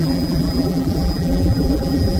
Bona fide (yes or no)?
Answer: no